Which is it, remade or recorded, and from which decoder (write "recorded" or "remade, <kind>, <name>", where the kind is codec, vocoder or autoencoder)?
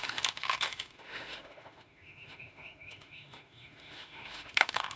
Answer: remade, autoencoder, DAC-VAE